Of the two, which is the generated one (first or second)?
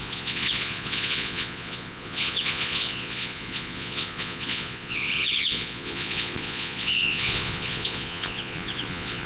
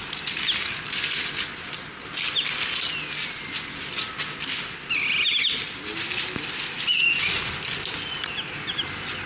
first